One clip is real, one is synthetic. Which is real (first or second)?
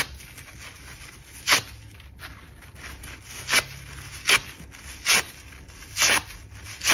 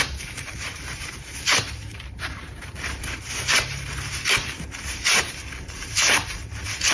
first